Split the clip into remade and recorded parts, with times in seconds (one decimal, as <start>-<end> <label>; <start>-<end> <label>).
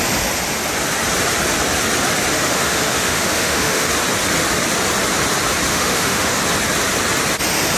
0.0-2.3 recorded; 2.3-3.9 remade; 3.9-5.7 recorded; 5.7-6.4 remade; 6.4-7.8 recorded